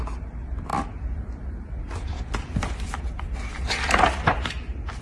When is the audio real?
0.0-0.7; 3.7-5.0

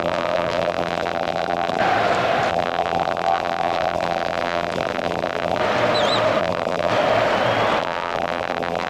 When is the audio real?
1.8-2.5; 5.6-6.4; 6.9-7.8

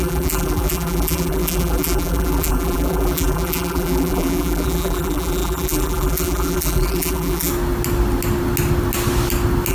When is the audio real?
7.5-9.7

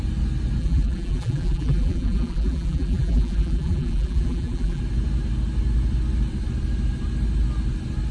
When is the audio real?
0.0-0.6; 4.8-8.1

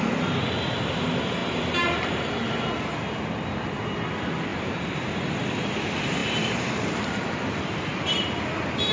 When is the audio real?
0.0-1.4; 2.3-4.5; 5.3-6.2; 8.4-8.9

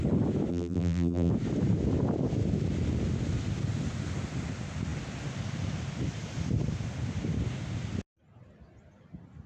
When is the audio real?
0.0-0.5; 1.3-9.5